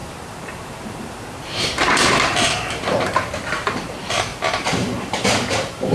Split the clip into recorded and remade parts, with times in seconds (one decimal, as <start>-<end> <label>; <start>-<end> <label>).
0.0-5.9 remade